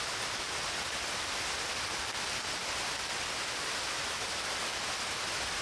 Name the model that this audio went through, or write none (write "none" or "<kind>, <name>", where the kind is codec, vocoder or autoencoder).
none